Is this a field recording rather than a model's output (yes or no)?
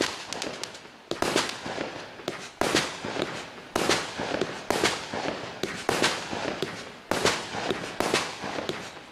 yes